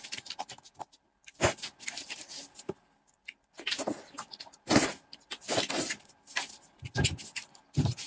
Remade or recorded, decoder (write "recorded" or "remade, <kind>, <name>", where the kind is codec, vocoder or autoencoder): recorded